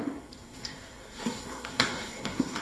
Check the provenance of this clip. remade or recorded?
remade